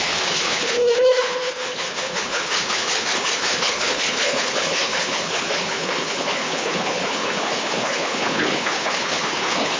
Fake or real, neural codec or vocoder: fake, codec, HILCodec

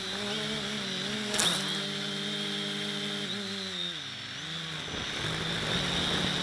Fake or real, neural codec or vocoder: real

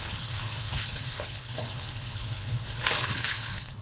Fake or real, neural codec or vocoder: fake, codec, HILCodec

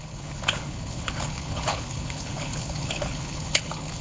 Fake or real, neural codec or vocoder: fake, codec, HILCodec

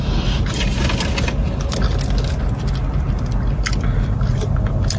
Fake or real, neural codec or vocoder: real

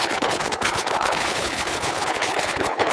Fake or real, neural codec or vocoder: fake, codec, HILCodec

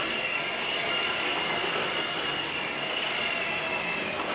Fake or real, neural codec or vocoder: real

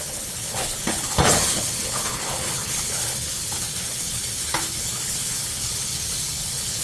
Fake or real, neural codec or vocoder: fake, codec, HILCodec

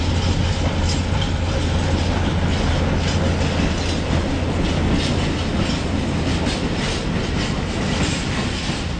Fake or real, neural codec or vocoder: real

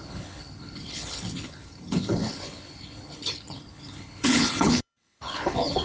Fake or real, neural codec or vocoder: fake, codec, HILCodec